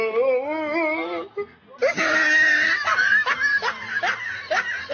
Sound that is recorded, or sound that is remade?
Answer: recorded